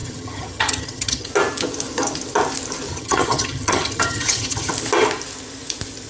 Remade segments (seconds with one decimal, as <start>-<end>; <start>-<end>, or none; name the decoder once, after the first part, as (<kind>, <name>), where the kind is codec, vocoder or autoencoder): 0.0-1.3 (vocoder, HiFi-GAN); 2.9-4.7